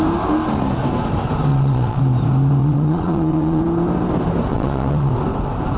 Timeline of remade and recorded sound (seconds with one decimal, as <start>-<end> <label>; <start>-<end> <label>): 0.0-1.5 recorded; 1.5-2.0 remade; 2.0-2.6 recorded; 2.6-3.6 remade; 3.6-4.5 recorded; 4.5-5.1 remade; 5.1-5.8 recorded